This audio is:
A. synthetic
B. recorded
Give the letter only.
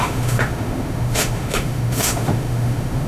A